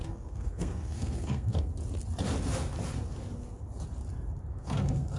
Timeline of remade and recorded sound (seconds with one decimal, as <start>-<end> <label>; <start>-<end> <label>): 0.0-1.7 remade; 1.7-4.5 recorded; 4.5-5.2 remade